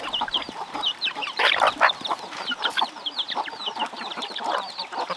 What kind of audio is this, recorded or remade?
remade